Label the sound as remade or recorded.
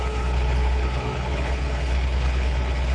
remade